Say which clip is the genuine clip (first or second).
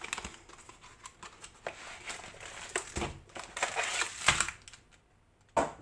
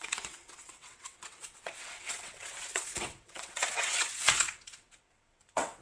first